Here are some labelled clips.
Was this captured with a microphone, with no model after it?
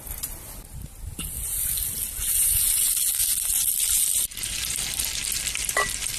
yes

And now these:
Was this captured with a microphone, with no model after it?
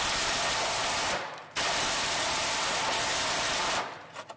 no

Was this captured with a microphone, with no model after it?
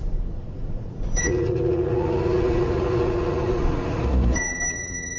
no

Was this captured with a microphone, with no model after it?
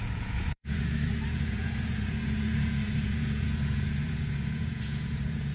no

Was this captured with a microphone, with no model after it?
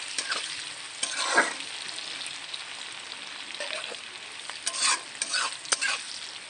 yes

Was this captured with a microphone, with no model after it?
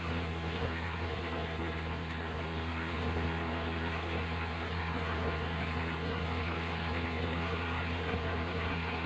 no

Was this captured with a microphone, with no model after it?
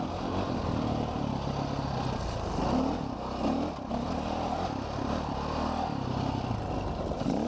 yes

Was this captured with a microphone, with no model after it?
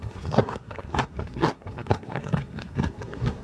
no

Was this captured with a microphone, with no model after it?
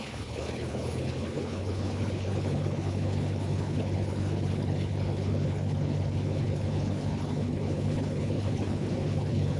no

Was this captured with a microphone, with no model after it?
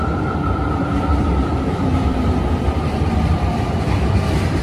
no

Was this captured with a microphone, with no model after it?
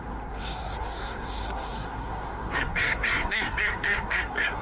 no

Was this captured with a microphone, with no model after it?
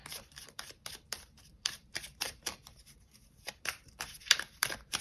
no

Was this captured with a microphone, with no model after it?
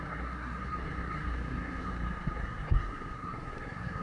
no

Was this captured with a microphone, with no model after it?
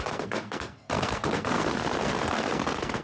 no